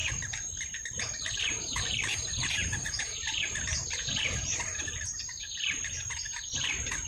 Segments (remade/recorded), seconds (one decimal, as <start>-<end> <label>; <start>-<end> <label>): 0.0-7.1 remade